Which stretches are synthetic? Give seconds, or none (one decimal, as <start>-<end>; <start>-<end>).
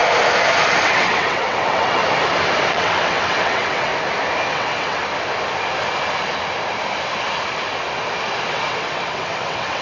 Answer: 0.8-2.0; 2.7-3.9; 4.5-5.0; 8.5-9.8